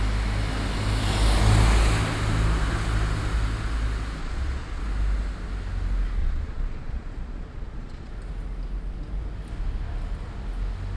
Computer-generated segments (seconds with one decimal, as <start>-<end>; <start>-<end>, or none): 4.2-4.8; 6.2-8.1